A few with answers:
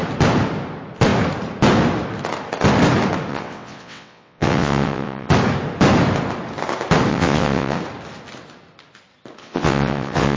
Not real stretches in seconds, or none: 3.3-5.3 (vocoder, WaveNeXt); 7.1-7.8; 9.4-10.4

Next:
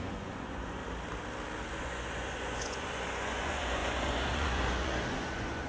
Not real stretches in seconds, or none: 0.0-0.8 (vocoder, Vocos); 1.7-5.7

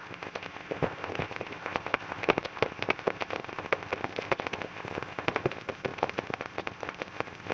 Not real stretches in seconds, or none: 0.0-7.5 (codec, ZipCodec)

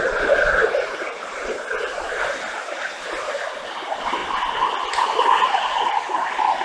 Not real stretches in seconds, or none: 0.6-2.8 (vocoder, BigVGAN v2)

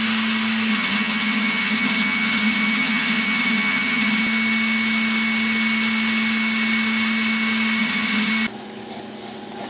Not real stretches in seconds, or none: 0.7-4.2 (vocoder, HiFi-GAN); 7.8-8.3

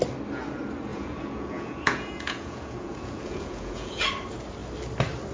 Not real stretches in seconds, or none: 0.9-4.1 (vocoder, Vocos)

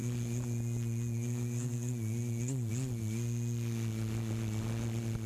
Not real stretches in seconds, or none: none